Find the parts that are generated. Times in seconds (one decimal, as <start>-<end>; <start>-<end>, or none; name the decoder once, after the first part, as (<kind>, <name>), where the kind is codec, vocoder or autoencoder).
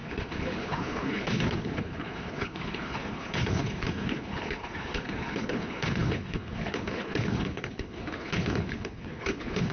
0.0-9.7 (codec, HILCodec)